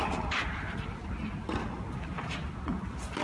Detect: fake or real real